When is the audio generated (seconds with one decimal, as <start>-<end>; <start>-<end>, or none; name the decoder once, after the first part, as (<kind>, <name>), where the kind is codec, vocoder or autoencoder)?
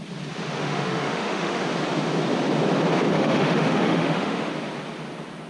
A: 0.6-1.6 (autoencoder, DAC-VAE); 3.1-4.5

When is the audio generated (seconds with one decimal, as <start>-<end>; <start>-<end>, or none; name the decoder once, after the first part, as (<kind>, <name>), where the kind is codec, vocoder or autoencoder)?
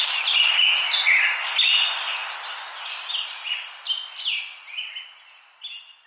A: none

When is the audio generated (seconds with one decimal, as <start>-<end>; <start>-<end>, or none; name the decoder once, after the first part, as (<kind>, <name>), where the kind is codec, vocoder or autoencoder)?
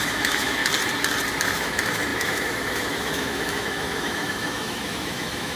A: 0.0-0.6 (autoencoder, DAC-VAE); 1.4-5.6